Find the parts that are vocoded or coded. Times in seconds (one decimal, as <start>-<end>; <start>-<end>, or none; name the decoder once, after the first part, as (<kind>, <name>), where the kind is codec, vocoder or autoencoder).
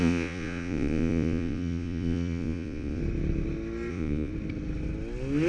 0.0-3.0 (vocoder, Vocos); 3.9-4.3